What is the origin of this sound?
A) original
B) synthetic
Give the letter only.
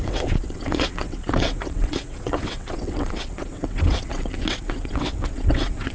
B